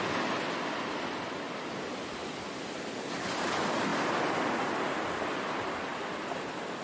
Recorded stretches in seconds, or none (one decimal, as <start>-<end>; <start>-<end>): 0.0-6.8